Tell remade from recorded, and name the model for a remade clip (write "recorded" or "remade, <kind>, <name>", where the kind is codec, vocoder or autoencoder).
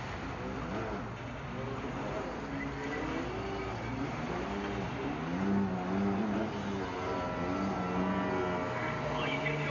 recorded